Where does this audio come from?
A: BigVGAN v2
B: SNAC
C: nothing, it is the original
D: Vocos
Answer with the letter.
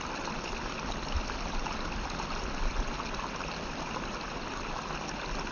C